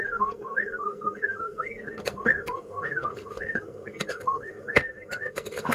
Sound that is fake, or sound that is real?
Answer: fake